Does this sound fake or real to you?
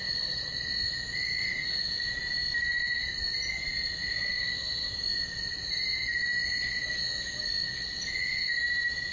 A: real